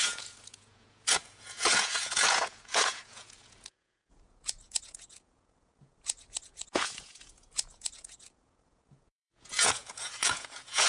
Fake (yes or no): yes